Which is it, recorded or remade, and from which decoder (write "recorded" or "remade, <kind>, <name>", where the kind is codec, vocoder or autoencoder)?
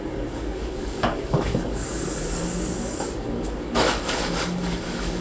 remade, codec, DAC